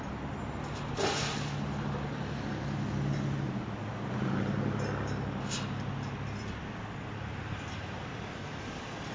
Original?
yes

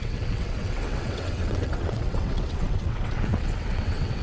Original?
no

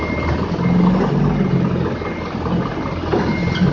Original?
yes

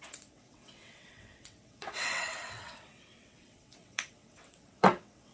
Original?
no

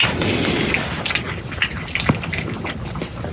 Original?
yes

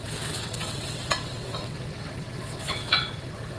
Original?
no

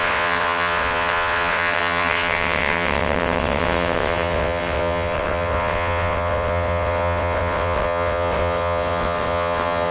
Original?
no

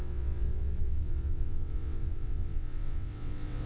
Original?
no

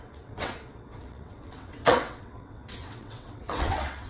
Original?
no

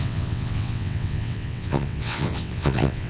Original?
no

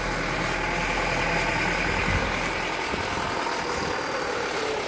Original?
yes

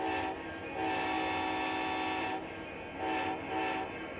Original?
yes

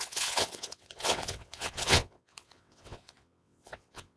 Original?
no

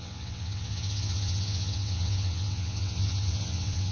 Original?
no